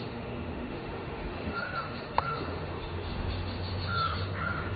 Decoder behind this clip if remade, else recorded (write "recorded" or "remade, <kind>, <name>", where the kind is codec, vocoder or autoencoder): remade, autoencoder, DAC-VAE